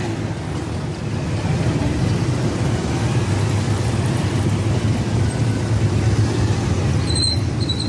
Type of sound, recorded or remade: recorded